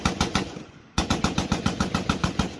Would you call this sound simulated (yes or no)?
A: yes